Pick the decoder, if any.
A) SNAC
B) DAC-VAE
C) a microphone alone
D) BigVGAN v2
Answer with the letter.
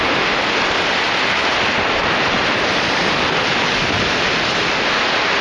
C